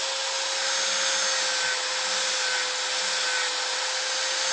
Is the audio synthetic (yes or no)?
no